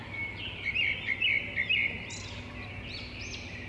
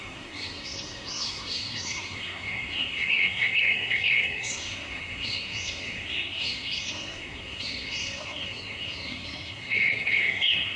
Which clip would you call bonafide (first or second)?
first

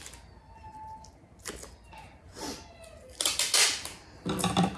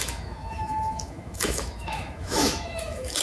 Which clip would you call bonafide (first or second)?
first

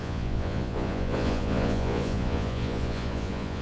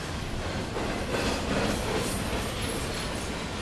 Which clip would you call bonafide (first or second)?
second